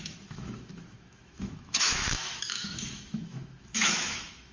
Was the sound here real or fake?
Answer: fake